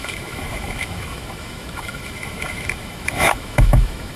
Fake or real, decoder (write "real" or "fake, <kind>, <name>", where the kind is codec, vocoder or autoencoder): fake, autoencoder, DAC-VAE